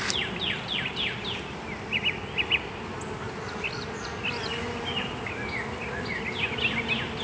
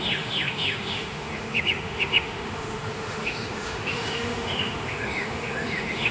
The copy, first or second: second